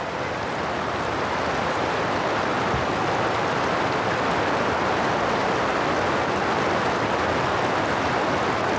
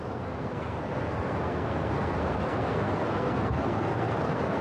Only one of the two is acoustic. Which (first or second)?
first